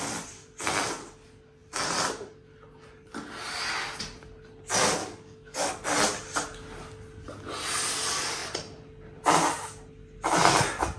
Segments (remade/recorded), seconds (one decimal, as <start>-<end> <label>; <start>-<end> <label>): 0.0-5.0 recorded; 5.0-5.7 remade; 5.7-11.0 recorded